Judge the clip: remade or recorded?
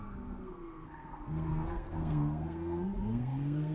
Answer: remade